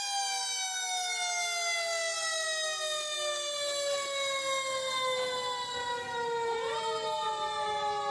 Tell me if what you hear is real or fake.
real